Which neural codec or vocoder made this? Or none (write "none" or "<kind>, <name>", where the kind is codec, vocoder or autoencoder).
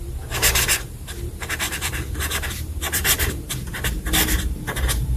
vocoder, BigVGAN v2